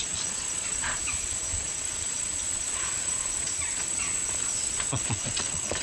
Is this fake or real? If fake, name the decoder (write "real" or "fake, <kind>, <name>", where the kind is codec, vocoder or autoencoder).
fake, vocoder, Vocos